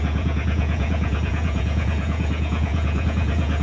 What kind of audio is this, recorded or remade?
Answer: remade